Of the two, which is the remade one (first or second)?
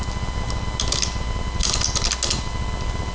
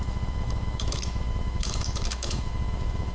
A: second